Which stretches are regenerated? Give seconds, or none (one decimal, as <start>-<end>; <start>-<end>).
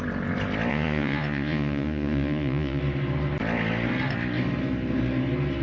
0.7-2.8